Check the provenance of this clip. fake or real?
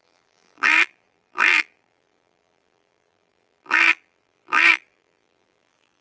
fake